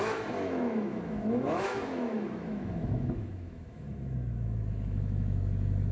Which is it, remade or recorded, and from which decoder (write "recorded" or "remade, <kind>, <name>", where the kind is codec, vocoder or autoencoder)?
remade, autoencoder, DAC-VAE